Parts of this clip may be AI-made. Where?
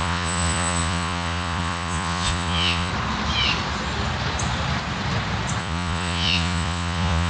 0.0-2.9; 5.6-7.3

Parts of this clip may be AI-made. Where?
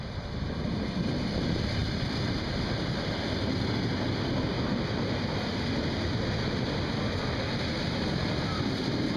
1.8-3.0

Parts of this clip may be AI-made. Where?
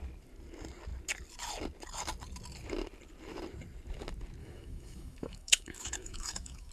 4.4-6.7